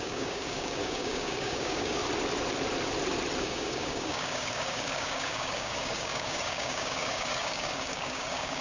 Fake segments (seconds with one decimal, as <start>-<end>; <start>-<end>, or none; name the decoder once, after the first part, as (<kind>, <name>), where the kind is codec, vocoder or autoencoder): 0.0-2.0 (codec, DAC); 3.4-8.6